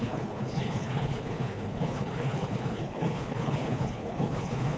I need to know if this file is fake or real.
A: fake